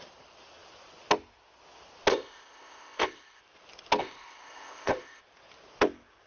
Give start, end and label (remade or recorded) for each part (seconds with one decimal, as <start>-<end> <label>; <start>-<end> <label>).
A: 0.0-2.1 recorded; 2.1-3.4 remade; 3.4-4.0 recorded; 4.0-5.2 remade; 5.2-6.3 recorded